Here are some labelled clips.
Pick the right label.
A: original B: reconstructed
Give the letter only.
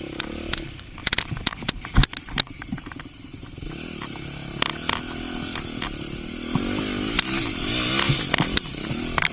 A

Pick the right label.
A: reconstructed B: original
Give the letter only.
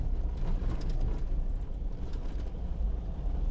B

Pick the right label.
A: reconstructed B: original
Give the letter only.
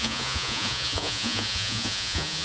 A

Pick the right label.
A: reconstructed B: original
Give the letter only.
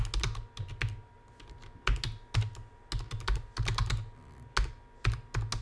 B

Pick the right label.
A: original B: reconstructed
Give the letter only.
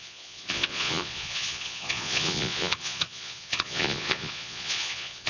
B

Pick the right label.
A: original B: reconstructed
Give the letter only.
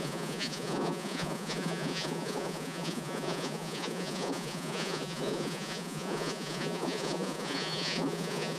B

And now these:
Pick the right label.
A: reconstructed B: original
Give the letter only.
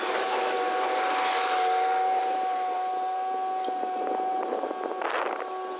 B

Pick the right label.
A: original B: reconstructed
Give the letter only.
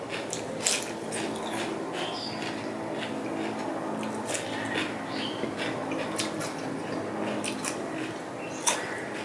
A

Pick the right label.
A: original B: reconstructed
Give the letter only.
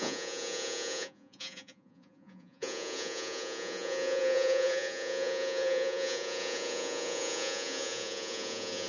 B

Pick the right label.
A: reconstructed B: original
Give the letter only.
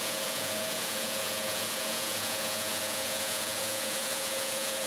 A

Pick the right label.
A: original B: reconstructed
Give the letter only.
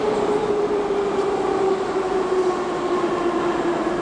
A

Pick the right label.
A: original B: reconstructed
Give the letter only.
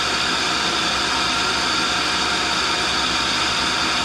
A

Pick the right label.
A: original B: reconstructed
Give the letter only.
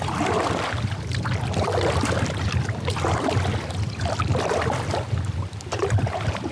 A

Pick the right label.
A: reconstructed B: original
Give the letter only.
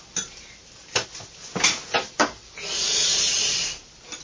B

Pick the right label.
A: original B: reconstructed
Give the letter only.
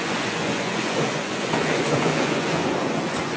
B